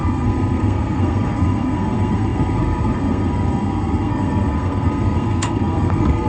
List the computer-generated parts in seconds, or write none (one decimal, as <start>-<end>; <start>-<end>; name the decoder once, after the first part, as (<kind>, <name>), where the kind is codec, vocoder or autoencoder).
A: 0.0-6.3 (codec, SNAC)